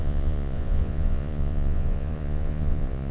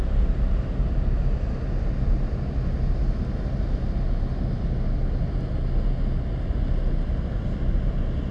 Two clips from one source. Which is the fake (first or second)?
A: first